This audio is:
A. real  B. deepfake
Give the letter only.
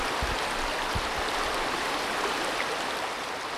A